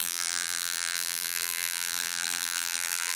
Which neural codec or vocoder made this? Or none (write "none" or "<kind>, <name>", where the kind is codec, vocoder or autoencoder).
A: vocoder, BigVGAN v2